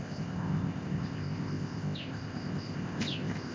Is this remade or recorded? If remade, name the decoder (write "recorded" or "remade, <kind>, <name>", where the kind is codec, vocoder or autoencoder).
remade, codec, ZipCodec